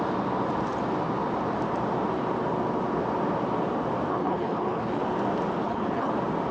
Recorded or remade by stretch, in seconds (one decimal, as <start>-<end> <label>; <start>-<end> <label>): 0.0-4.1 recorded; 4.1-5.0 remade; 5.0-5.6 recorded; 5.6-6.1 remade; 6.1-6.5 recorded